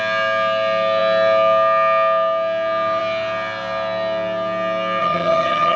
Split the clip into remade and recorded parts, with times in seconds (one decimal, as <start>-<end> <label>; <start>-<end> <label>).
0.0-5.0 recorded; 5.0-5.8 remade